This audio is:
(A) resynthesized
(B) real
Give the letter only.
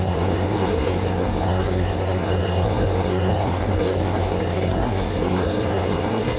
A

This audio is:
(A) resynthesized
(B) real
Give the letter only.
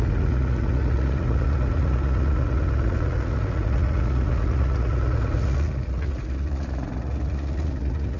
A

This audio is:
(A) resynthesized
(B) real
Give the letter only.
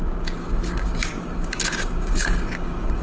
A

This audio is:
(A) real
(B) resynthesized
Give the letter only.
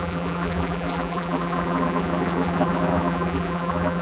B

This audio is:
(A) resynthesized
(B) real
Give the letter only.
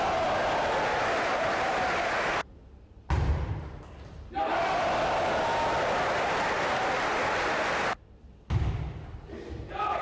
B